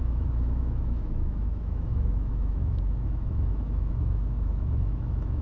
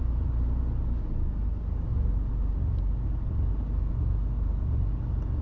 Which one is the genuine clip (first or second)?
second